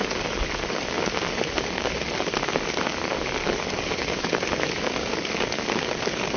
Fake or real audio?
fake